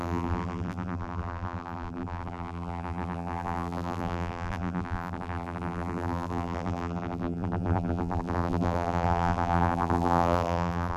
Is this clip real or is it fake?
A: fake